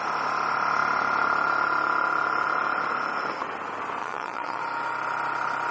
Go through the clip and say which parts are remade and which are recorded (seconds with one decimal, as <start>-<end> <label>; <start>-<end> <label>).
0.0-4.0 recorded; 4.0-4.6 remade; 4.6-5.7 recorded